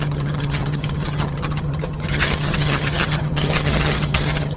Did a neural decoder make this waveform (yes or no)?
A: yes